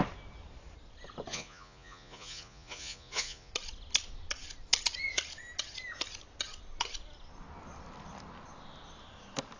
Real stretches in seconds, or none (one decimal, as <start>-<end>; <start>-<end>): 0.0-1.3; 3.5-9.6